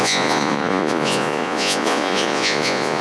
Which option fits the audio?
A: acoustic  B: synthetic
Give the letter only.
B